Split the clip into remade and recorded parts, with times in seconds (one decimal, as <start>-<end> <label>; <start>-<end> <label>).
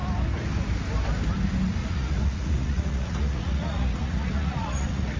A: 0.0-1.8 recorded; 1.8-5.2 remade